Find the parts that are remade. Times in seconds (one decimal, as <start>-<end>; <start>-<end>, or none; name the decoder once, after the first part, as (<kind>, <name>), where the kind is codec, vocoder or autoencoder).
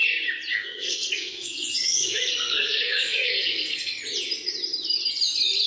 0.5-3.9 (codec, SNAC)